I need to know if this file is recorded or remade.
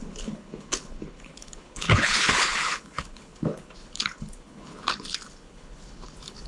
remade